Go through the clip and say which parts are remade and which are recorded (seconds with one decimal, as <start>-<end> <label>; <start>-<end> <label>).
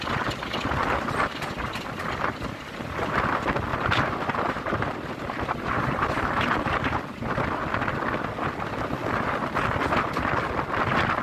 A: 0.0-3.7 recorded; 3.7-6.4 remade; 6.4-11.2 recorded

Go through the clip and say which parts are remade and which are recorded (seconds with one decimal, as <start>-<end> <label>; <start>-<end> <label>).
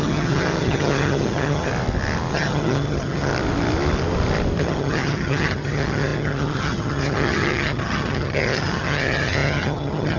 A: 0.0-1.7 remade; 1.7-2.3 recorded; 2.3-3.3 remade; 3.3-4.6 recorded; 4.6-10.2 remade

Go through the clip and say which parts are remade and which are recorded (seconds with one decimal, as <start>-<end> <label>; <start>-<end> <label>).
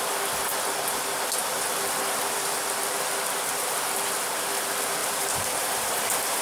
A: 0.0-5.0 recorded; 5.0-6.4 remade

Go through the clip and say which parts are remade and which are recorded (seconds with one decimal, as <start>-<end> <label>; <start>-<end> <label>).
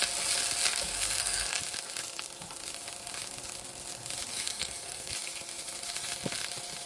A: 0.0-0.9 recorded; 0.9-1.6 remade; 1.6-4.3 recorded; 4.3-5.1 remade; 5.1-6.9 recorded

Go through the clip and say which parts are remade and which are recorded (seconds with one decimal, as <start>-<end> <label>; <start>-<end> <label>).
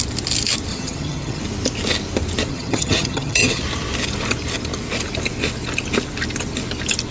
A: 0.0-0.7 recorded; 0.7-1.4 remade; 1.4-2.5 recorded; 2.5-3.6 remade; 3.6-7.1 recorded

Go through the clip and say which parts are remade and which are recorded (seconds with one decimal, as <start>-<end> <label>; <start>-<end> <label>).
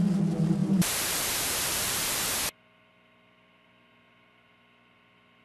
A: 0.0-0.6 recorded; 0.6-2.3 remade; 2.3-5.4 recorded